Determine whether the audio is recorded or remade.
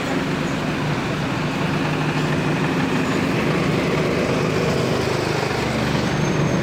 recorded